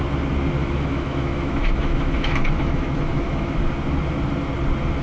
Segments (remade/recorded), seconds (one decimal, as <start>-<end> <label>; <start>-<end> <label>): 0.0-0.6 recorded; 0.6-3.6 remade; 3.6-5.0 recorded